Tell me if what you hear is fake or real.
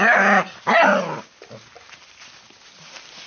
real